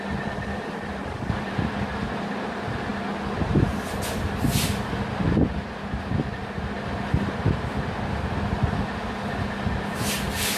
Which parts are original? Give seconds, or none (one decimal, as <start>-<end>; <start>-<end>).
0.0-1.0; 1.7-10.6